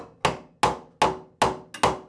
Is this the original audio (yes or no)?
yes